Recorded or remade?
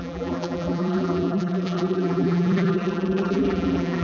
remade